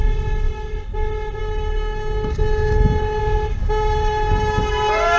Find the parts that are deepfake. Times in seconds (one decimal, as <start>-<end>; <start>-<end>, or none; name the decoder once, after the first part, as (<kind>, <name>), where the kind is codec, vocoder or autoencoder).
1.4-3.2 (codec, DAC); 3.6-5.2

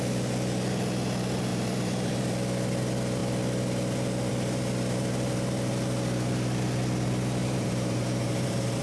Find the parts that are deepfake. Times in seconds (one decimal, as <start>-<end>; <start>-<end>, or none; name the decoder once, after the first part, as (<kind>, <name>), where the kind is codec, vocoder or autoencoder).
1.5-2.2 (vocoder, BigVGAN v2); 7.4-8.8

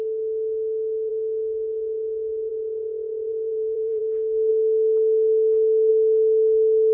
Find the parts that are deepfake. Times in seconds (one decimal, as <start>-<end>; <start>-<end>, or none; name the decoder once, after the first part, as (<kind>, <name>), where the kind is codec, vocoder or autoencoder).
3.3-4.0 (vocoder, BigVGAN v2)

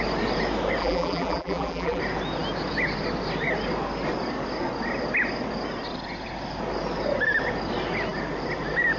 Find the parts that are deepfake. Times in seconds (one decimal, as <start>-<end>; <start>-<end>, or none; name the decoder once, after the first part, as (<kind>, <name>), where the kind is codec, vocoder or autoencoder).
0.8-2.0 (vocoder, BigVGAN v2)

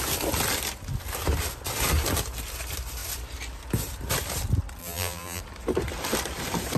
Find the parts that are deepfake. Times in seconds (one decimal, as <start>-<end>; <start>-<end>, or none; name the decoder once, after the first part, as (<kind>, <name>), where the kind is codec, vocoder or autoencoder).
4.8-5.4 (vocoder, BigVGAN v2)

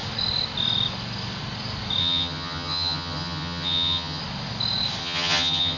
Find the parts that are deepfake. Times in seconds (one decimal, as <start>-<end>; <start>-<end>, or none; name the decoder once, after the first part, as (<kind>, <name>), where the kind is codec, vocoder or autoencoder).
2.0-4.2 (vocoder, HiFi-GAN); 5.0-5.8